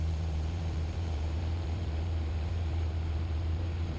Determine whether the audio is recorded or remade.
remade